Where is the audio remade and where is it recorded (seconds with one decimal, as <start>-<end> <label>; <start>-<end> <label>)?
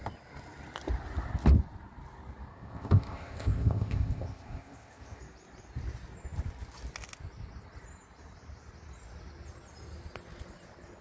0.0-2.5 recorded; 2.5-5.2 remade; 5.2-11.0 recorded